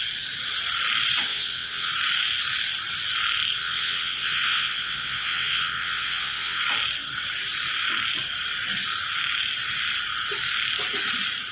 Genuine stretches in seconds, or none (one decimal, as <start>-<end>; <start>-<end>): 0.0-1.3; 1.9-3.6; 6.6-11.5